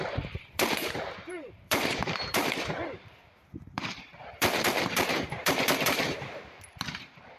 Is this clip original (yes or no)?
no